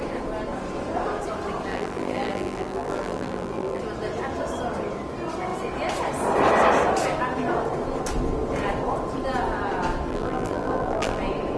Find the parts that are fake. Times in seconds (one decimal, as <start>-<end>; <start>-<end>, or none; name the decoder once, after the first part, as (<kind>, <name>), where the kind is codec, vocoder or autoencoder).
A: 1.7-3.8 (vocoder, BigVGAN v2); 10.1-11.2